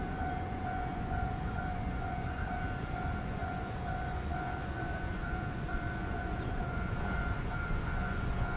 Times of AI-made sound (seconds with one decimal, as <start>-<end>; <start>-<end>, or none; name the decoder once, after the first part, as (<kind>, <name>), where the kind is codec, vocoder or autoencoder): 0.0-8.6 (vocoder, Vocos)